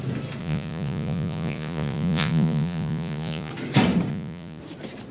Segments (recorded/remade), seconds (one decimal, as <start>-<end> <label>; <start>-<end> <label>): 0.0-0.4 recorded; 0.4-3.5 remade; 3.5-4.1 recorded; 4.1-4.6 remade; 4.6-5.1 recorded